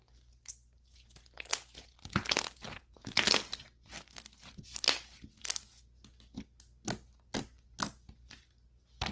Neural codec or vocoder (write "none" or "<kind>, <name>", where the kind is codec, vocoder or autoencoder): none